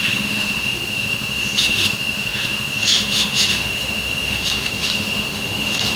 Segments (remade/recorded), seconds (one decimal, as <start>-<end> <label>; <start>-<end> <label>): 0.0-6.0 remade